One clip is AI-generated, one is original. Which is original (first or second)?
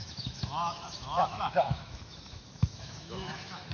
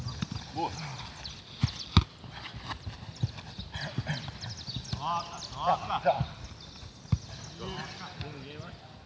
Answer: second